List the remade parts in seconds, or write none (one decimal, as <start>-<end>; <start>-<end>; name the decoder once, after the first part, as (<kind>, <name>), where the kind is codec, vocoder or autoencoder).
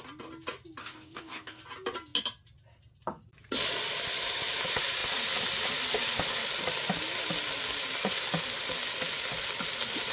0.8-1.6 (codec, DAC)